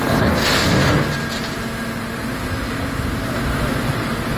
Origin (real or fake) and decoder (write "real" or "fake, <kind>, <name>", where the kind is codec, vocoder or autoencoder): real